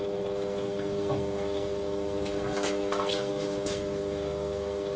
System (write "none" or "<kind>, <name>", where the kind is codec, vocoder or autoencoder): codec, SNAC